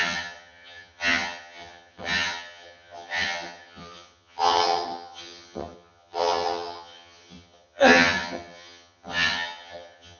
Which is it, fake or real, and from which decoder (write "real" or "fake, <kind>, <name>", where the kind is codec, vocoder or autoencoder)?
fake, vocoder, HiFi-GAN